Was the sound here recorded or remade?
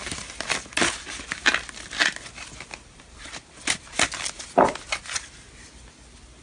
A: recorded